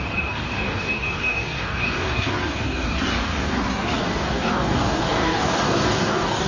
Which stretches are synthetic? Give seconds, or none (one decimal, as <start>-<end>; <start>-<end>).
0.0-6.5